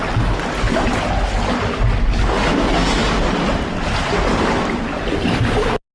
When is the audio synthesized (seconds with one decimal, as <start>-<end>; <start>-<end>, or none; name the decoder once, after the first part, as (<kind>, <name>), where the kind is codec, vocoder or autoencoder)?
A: none